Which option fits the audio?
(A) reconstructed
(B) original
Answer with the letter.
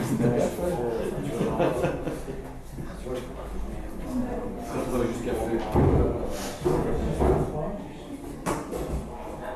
B